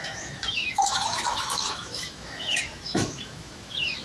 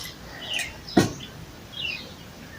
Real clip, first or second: second